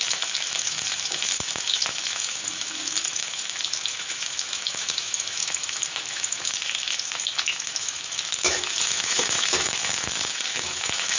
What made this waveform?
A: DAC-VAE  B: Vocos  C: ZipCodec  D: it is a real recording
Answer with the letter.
A